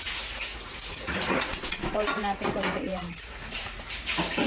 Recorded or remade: remade